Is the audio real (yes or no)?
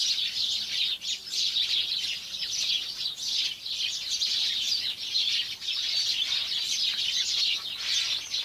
yes